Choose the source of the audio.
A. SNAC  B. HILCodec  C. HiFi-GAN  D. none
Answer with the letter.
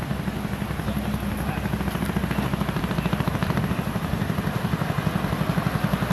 D